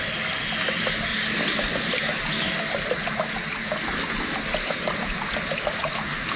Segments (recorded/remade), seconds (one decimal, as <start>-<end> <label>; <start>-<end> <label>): 0.0-4.5 recorded; 4.5-5.3 remade; 5.3-6.4 recorded